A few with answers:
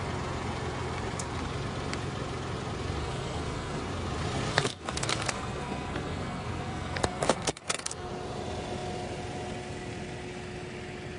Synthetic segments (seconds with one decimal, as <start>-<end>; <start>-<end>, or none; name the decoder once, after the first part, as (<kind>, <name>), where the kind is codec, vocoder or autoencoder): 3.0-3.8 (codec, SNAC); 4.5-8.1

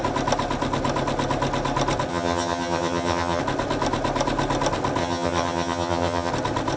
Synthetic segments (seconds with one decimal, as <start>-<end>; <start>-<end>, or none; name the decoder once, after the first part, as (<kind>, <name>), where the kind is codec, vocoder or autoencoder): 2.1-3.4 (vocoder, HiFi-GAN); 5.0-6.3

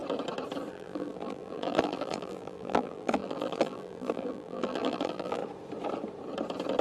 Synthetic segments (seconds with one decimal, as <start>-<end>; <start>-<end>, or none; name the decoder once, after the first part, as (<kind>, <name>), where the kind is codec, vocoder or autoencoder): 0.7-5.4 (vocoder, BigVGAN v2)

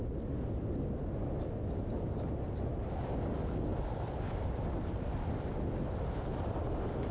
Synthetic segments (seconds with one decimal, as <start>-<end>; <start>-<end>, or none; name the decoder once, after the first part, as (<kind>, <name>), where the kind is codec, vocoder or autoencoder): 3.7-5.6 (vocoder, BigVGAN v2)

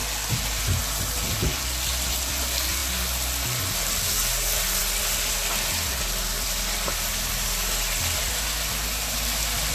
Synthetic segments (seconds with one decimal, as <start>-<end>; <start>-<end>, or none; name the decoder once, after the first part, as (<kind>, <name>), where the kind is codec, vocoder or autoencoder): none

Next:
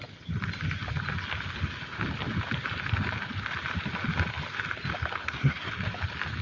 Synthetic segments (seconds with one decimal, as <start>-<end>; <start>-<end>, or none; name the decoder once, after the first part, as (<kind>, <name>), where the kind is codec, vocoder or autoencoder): 5.2-5.7 (codec, SNAC)

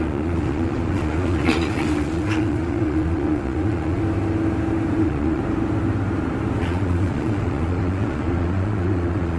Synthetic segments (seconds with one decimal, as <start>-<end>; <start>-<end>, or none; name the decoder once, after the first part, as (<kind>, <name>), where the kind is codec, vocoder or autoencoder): 0.0-4.0 (vocoder, Vocos); 5.0-5.4; 6.6-9.4

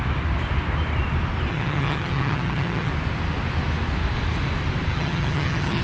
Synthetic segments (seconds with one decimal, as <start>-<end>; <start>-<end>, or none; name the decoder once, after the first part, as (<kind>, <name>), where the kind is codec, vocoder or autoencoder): 1.5-2.9 (vocoder, HiFi-GAN); 4.9-5.8